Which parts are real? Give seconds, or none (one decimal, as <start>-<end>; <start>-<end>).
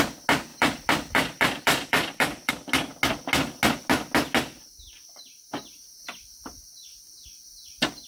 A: 0.0-0.5; 2.5-8.1